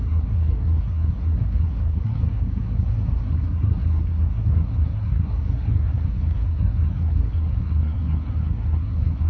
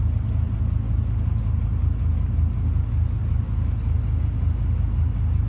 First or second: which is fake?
first